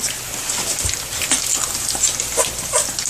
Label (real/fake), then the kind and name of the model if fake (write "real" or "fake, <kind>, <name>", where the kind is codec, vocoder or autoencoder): real